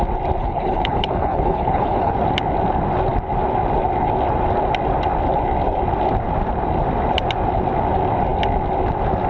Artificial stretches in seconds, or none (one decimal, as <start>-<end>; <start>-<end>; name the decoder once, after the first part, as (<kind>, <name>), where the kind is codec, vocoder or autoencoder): 0.4-2.1 (codec, HILCodec)